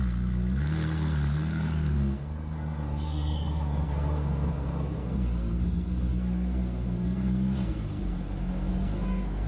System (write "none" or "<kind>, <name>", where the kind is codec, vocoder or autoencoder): codec, SNAC